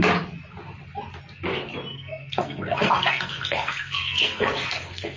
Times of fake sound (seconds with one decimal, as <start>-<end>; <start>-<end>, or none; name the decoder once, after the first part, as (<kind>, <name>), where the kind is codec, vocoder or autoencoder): 1.9-5.2 (codec, SNAC)